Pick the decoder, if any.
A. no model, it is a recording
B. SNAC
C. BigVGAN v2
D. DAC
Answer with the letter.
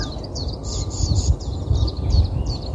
C